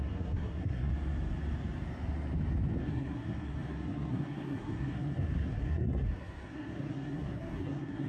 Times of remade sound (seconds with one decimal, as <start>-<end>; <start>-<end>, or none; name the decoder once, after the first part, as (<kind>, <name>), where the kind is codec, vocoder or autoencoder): 0.0-0.9 (codec, SNAC); 2.8-8.1